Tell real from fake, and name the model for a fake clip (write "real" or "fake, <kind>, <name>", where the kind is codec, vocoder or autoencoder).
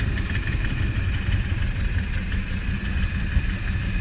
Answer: real